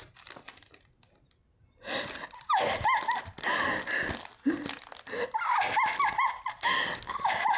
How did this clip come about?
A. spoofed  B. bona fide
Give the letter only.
B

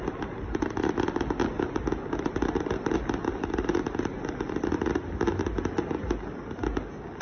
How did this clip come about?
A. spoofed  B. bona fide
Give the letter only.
B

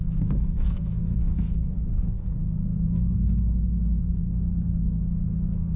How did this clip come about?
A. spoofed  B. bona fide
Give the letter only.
A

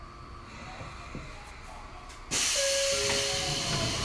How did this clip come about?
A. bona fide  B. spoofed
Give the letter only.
A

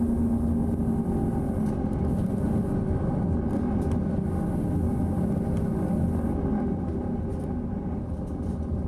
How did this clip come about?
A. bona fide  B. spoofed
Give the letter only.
A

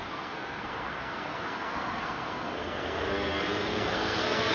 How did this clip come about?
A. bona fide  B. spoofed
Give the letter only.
B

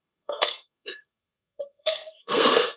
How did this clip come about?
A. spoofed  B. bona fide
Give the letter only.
A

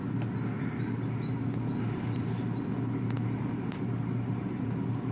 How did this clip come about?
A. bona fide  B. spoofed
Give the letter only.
A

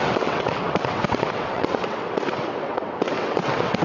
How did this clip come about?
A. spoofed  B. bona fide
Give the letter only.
A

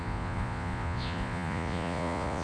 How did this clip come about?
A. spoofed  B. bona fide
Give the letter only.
A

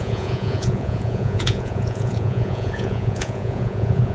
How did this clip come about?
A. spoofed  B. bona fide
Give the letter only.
A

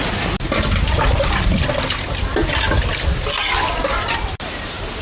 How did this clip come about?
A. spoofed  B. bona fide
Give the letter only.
B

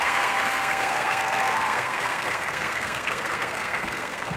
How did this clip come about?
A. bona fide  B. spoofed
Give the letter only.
B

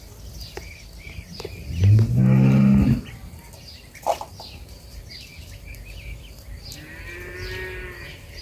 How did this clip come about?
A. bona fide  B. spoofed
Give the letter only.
A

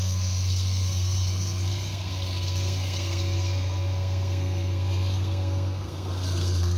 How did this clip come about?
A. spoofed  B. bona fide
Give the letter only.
A